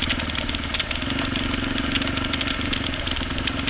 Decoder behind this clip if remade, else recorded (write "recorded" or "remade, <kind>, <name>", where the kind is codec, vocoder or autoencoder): recorded